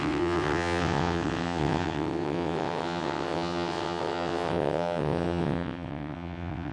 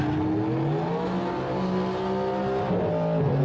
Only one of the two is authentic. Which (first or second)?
second